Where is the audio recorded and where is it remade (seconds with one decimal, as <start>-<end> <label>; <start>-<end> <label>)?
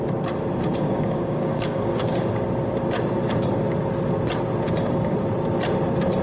0.0-0.7 recorded; 0.7-2.3 remade; 2.3-6.2 recorded